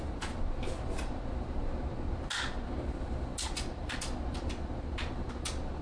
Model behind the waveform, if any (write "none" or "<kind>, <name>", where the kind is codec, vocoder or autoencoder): none